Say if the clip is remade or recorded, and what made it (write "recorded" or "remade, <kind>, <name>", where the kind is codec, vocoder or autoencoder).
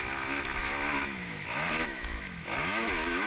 remade, autoencoder, DAC-VAE